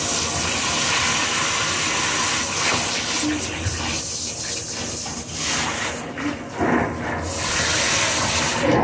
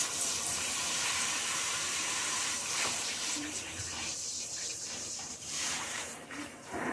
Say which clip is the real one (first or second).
first